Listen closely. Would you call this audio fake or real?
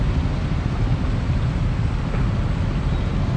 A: real